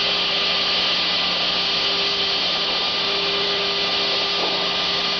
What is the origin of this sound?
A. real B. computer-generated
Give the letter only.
A